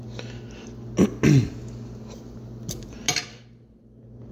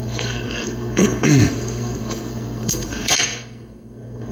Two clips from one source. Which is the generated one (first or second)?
second